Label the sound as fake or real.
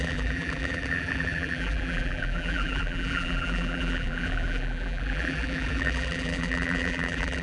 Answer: fake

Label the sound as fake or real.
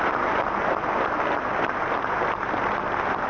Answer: real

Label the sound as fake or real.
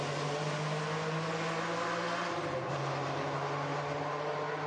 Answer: real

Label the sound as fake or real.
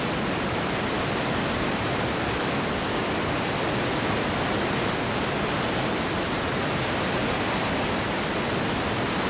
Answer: real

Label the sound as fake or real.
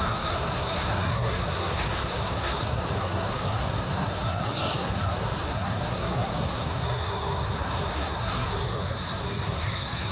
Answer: fake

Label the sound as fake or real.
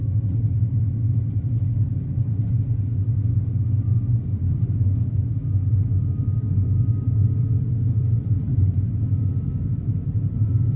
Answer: real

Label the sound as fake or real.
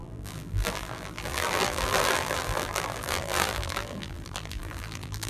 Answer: fake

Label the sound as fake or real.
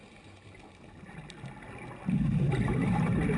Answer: real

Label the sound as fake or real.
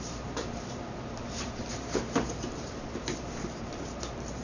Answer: fake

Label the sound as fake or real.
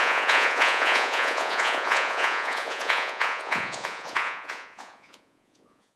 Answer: fake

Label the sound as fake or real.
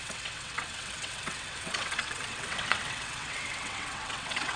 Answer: fake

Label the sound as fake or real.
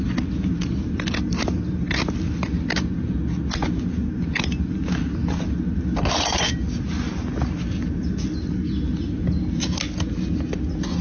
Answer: real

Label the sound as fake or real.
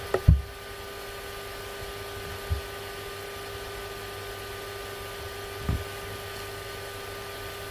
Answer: real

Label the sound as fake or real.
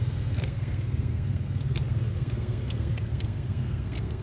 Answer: fake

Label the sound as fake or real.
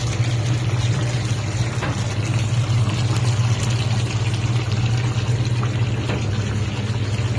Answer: real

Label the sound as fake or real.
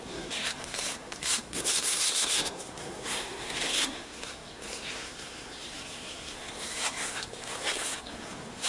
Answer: fake